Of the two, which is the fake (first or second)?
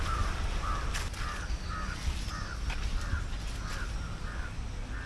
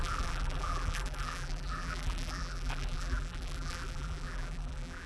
second